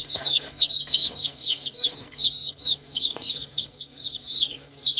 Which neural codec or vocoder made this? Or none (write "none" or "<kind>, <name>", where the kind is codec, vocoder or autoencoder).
codec, SNAC